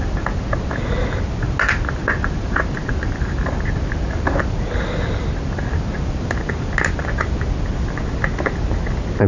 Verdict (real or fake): real